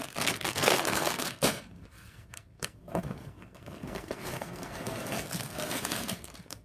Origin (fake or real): fake